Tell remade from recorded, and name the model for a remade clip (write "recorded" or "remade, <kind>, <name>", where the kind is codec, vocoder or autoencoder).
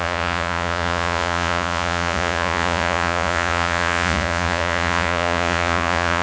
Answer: remade, vocoder, Vocos